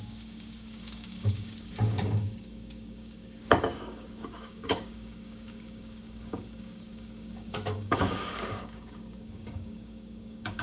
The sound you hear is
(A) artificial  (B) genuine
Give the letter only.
A